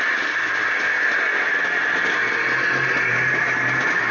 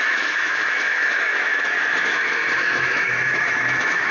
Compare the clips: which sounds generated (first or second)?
second